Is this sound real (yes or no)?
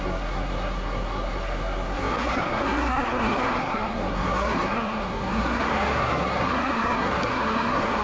no